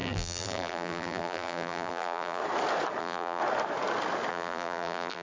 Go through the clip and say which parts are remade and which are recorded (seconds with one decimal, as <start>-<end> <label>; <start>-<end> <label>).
0.0-2.4 remade; 2.4-3.0 recorded; 3.0-3.4 remade; 3.4-4.3 recorded; 4.3-5.2 remade